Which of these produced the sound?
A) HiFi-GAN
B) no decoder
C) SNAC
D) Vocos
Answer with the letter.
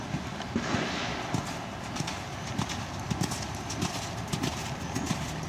B